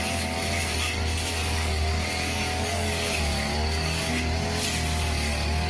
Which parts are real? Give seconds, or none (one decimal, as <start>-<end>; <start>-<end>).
0.0-1.4; 4.1-5.7